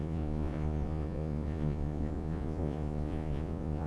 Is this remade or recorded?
remade